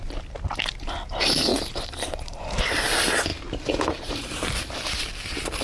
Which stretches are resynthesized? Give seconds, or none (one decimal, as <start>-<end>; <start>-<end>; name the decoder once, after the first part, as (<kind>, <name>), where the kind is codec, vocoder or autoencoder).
1.5-2.4 (vocoder, BigVGAN v2); 3.3-4.8

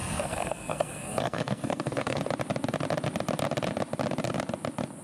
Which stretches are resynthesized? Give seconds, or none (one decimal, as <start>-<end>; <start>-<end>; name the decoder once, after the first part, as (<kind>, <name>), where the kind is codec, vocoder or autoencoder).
0.0-2.2 (codec, SNAC)

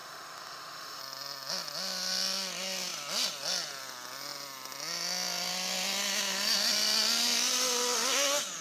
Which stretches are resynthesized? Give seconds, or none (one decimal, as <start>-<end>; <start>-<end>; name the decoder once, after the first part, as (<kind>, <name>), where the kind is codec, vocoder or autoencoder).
0.0-1.0 (autoencoder, DAC-VAE)